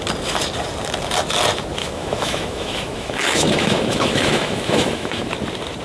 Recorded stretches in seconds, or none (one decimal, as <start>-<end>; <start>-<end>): 0.0-1.8; 5.3-5.8